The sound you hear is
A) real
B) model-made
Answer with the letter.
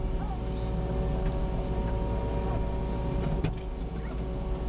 A